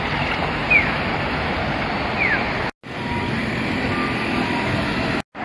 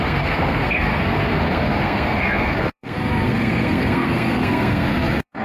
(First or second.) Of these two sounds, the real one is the first